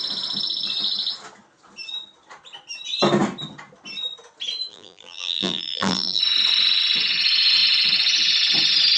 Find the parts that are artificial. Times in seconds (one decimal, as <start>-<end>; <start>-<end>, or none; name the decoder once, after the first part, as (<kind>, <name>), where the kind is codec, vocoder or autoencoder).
4.7-6.2 (vocoder, BigVGAN v2)